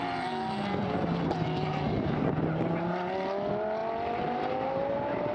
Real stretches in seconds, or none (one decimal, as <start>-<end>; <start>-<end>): 0.0-5.3